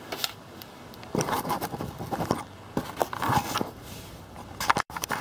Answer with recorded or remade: recorded